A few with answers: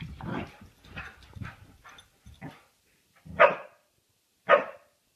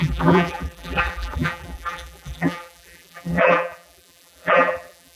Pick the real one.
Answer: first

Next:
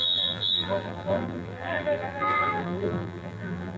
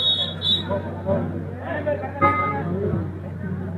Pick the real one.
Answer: second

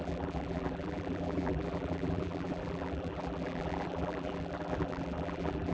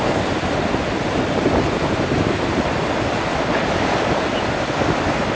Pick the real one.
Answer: second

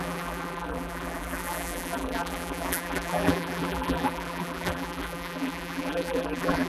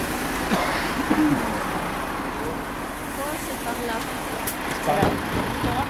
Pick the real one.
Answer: second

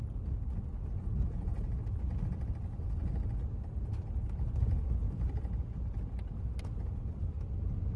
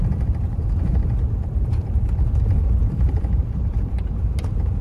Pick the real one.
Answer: first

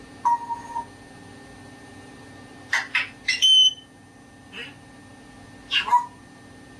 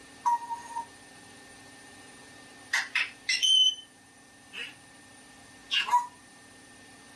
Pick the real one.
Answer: first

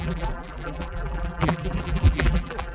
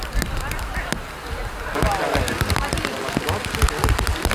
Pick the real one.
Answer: second